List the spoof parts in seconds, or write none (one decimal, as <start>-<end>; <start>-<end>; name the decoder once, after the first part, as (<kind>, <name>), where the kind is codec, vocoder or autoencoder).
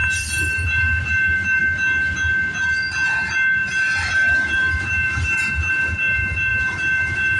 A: 0.0-1.6 (vocoder, BigVGAN v2); 3.6-5.7; 6.5-7.4